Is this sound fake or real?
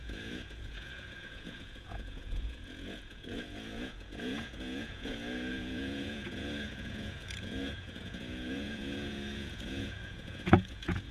fake